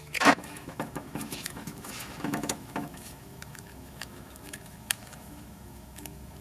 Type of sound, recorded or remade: remade